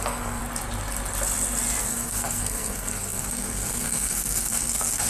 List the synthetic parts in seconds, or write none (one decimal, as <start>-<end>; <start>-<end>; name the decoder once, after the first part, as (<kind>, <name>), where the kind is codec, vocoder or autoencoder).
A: 0.0-0.4 (codec, SNAC); 1.8-5.1